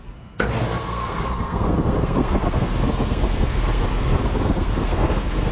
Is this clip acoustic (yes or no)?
no